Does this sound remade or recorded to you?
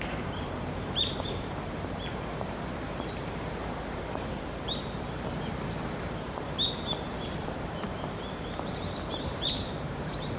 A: remade